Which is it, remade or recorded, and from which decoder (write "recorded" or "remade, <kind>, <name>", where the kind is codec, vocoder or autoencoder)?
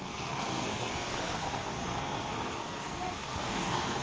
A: remade, codec, SNAC